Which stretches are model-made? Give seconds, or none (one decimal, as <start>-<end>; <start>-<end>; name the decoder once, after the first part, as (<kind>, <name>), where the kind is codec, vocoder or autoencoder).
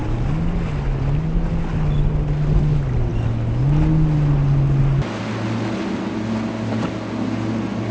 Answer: none